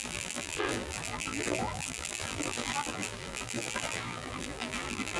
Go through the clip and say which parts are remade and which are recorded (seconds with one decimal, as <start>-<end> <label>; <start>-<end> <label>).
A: 0.0-5.2 remade